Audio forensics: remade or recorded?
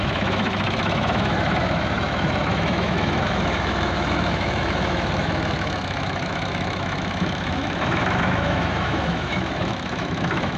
remade